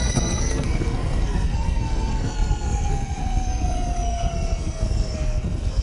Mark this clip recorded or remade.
remade